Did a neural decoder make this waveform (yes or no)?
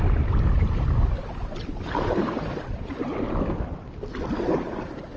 no